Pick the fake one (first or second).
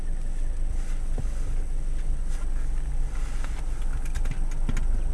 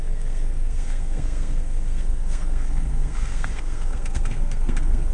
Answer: second